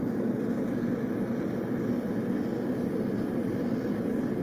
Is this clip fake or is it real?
real